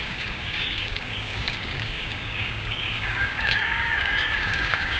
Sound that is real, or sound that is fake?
fake